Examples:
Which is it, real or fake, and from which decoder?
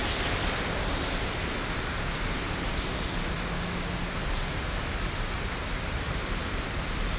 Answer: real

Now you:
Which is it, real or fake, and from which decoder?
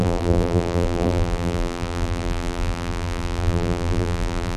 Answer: fake, vocoder, BigVGAN v2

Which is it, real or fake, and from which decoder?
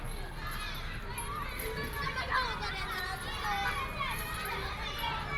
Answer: real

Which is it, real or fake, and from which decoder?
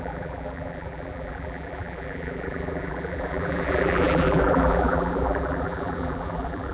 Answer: fake, vocoder, BigVGAN v2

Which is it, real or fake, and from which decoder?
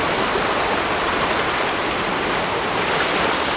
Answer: fake, vocoder, BigVGAN v2